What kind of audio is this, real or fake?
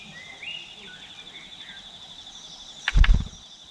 real